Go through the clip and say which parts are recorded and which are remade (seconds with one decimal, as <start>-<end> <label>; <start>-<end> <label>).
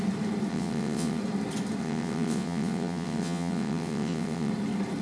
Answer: 0.0-0.5 recorded; 0.5-1.2 remade; 1.2-1.8 recorded; 1.8-4.5 remade; 4.5-5.0 recorded